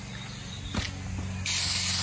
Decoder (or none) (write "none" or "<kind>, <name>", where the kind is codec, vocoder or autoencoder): none